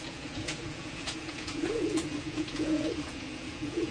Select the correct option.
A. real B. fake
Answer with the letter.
B